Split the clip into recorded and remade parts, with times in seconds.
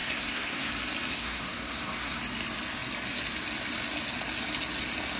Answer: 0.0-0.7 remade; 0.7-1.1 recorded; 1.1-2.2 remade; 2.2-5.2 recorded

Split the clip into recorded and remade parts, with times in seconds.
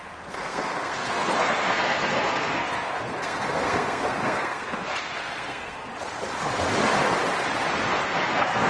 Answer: 0.0-5.9 remade; 5.9-7.8 recorded; 7.8-8.7 remade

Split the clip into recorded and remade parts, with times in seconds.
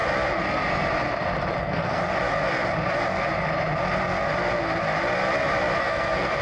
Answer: 0.0-1.6 recorded; 1.6-2.0 remade; 2.0-5.8 recorded; 5.8-6.4 remade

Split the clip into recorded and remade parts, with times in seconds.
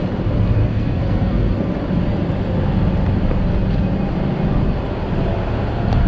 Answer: 0.0-0.6 recorded; 0.6-1.7 remade; 1.7-6.1 recorded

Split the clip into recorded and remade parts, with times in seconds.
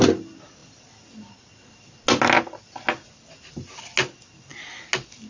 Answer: 0.0-5.3 recorded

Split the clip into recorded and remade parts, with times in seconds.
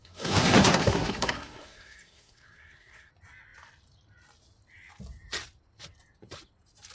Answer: 0.0-3.1 remade; 3.1-6.9 recorded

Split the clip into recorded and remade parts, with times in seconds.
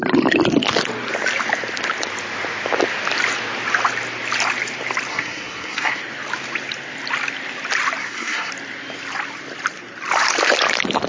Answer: 0.0-5.1 recorded; 5.1-6.0 remade; 6.0-8.0 recorded; 8.0-8.5 remade; 8.5-11.1 recorded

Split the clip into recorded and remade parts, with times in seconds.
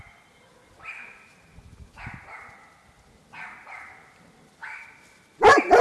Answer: 0.0-5.8 recorded